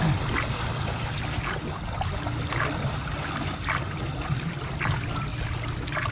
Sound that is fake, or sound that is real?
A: real